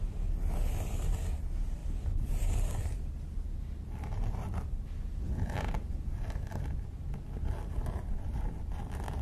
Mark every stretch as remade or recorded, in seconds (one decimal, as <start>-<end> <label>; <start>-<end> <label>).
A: 0.0-9.2 recorded